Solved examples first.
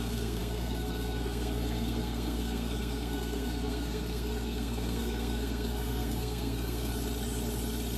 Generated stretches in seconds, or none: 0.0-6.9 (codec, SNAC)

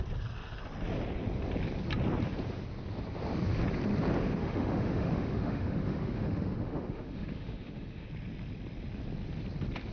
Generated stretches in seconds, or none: 4.4-8.1 (autoencoder, DAC-VAE)

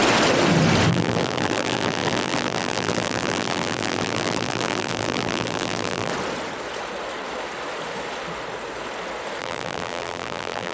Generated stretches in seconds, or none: 0.9-6.1 (vocoder, BigVGAN v2); 9.4-10.7